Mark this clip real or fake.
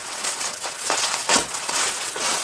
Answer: fake